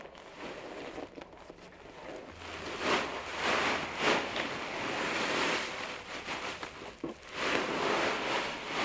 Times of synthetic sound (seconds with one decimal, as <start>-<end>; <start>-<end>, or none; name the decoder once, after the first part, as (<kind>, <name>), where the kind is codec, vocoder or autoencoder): none